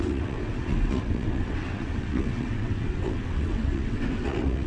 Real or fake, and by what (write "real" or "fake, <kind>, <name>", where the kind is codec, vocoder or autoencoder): fake, vocoder, WaveNeXt